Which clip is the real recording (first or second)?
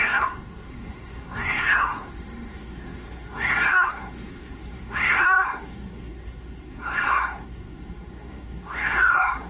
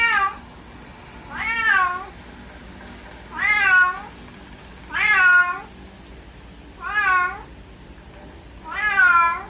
second